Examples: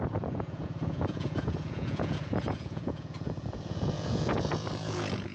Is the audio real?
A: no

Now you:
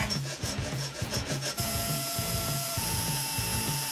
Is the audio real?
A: no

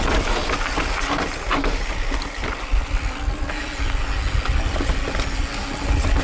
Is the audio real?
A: yes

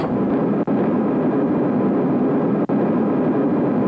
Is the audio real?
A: yes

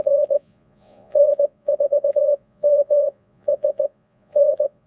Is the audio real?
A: no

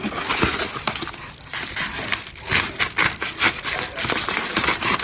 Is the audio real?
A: yes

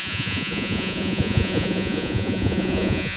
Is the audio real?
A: no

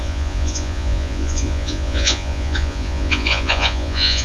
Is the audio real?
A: no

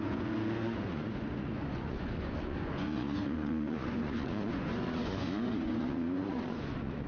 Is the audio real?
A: no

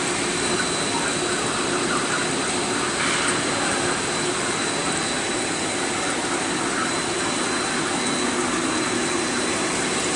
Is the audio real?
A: yes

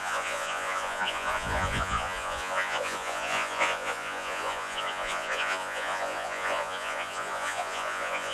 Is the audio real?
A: no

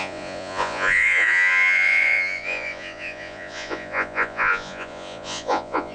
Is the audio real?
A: no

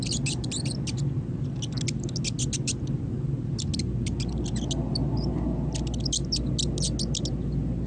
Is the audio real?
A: yes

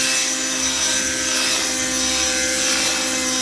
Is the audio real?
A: yes